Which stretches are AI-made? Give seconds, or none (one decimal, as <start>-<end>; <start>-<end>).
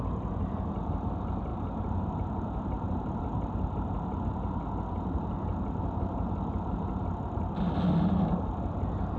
1.5-4.2